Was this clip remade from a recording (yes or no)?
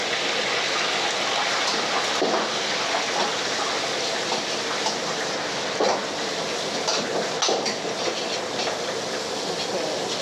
no